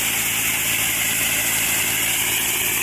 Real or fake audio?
real